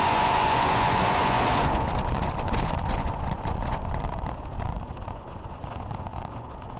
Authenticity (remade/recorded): remade